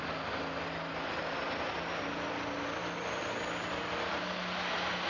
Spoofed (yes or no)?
no